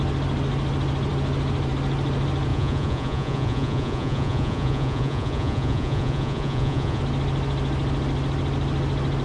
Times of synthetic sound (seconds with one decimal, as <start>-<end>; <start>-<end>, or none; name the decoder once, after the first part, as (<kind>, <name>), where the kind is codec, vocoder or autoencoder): 2.5-7.0 (vocoder, Vocos)